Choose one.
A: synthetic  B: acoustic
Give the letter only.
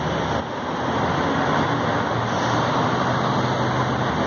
B